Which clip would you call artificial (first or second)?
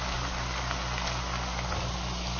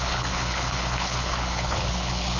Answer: second